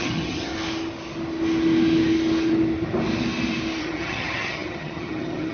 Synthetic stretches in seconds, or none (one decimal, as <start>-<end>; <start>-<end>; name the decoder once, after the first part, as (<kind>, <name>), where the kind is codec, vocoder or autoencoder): 0.0-0.5 (vocoder, HiFi-GAN); 3.8-5.5